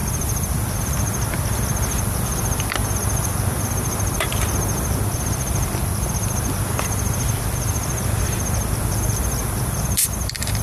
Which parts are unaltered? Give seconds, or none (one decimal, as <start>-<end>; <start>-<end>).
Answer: none